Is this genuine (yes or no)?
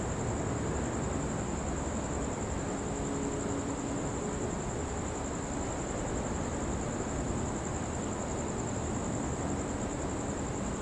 yes